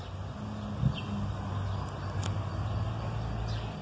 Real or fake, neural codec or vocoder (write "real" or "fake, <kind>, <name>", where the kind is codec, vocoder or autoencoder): real